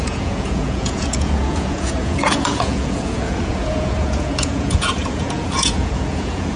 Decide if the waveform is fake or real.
fake